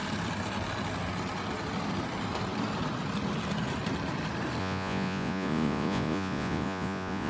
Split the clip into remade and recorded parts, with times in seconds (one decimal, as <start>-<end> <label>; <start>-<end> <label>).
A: 0.0-4.6 recorded; 4.6-7.3 remade